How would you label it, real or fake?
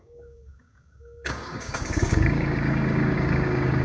fake